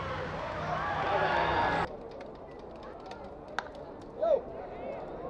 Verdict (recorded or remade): recorded